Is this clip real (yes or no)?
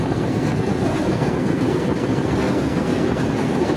no